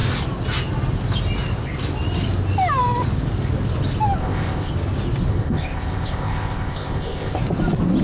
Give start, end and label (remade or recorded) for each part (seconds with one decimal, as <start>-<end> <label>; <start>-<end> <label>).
0.0-4.2 recorded; 4.2-4.7 remade; 4.7-5.3 recorded; 5.3-7.4 remade; 7.4-8.0 recorded